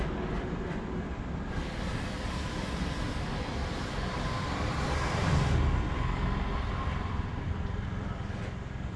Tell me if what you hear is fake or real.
fake